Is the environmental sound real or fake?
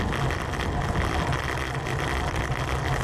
real